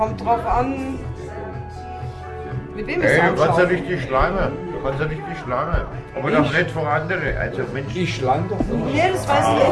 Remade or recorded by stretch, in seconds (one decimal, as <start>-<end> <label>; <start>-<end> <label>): 0.0-9.7 recorded